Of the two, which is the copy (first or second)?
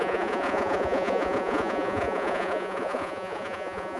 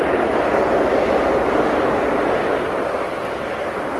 first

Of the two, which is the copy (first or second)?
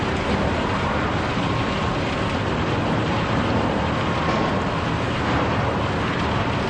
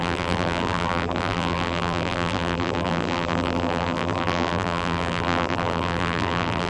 second